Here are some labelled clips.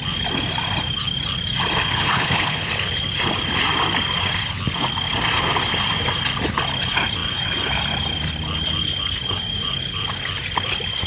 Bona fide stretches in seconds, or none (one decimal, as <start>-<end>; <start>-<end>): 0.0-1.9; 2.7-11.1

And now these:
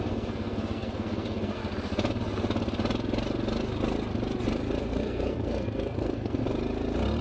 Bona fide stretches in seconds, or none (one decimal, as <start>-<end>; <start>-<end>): 1.6-4.8; 6.4-7.2

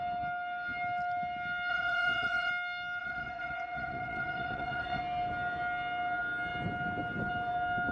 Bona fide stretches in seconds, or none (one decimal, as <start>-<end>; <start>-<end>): 0.0-1.7; 2.5-3.0; 5.0-7.9